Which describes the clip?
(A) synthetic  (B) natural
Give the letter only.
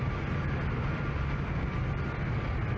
B